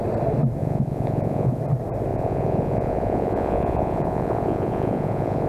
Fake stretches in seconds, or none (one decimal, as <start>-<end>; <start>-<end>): 0.6-1.6; 2.1-5.5